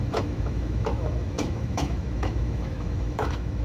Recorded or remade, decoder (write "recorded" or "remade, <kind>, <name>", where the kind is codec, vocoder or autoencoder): remade, autoencoder, DAC-VAE